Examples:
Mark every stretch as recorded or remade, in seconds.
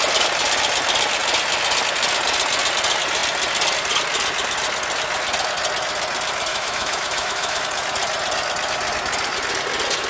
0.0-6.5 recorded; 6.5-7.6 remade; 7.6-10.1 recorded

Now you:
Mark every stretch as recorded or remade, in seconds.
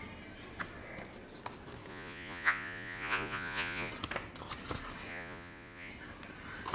0.0-1.9 recorded; 1.9-3.9 remade; 3.9-5.1 recorded; 5.1-5.9 remade; 5.9-6.7 recorded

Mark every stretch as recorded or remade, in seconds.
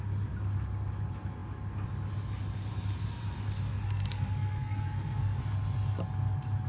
0.0-3.7 recorded; 3.7-5.4 remade; 5.4-6.7 recorded